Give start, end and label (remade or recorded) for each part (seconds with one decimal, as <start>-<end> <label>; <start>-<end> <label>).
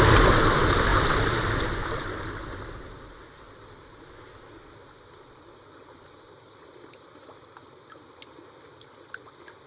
0.0-9.7 recorded